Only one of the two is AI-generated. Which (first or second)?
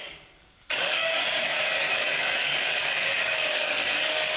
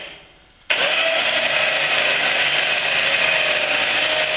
first